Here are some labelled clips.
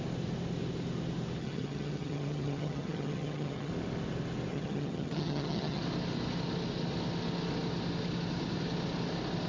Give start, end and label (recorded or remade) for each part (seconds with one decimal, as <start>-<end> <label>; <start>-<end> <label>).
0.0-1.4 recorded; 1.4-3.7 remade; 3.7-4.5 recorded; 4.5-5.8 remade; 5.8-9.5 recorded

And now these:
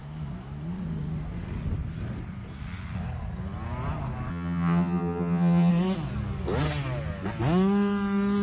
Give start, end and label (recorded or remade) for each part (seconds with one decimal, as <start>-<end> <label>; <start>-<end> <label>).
0.0-4.3 recorded; 4.3-5.7 remade; 5.7-8.4 recorded

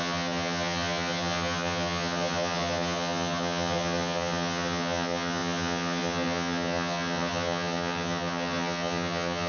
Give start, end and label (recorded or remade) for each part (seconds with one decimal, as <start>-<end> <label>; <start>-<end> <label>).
0.0-9.5 remade